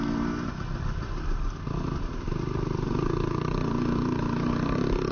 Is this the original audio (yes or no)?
yes